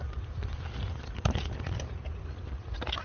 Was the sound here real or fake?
real